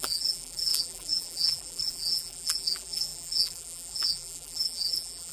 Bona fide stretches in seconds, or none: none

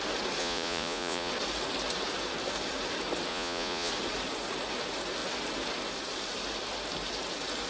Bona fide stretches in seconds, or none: 0.0-0.4; 1.3-3.3; 3.9-7.7

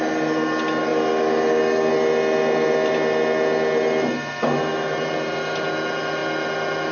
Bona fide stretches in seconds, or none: 0.0-6.9

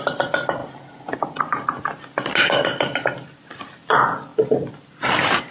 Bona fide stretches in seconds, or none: 0.0-5.5

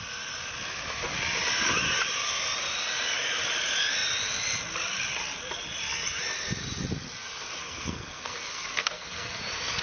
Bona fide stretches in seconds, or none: 0.0-7.6; 9.4-9.8

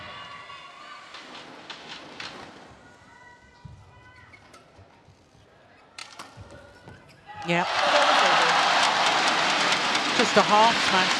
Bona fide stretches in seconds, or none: 0.0-11.2